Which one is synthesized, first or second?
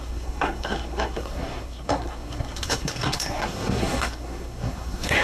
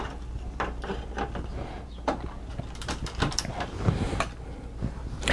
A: first